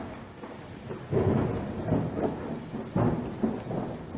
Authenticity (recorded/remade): recorded